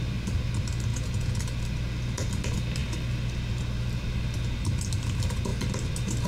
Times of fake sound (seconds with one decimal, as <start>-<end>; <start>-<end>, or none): 0.9-1.4